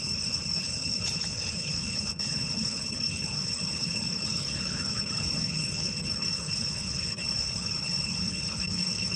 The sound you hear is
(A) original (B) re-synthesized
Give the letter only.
B